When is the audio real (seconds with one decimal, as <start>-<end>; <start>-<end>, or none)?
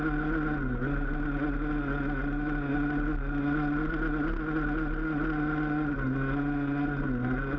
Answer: 0.0-7.6